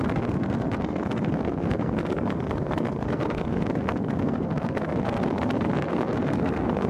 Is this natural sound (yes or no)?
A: no